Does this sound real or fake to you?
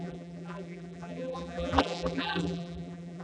fake